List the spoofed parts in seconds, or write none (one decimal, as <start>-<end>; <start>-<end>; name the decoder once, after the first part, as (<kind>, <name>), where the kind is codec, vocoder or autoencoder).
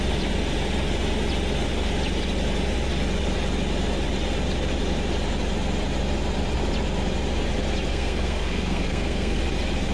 7.9-9.4 (codec, SNAC)